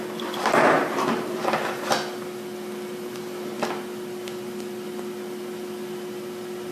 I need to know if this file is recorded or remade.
recorded